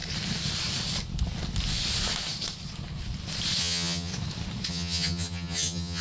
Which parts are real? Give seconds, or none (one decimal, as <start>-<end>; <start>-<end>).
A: 0.0-3.6; 4.1-4.7